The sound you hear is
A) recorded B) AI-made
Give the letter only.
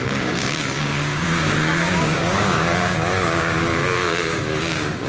B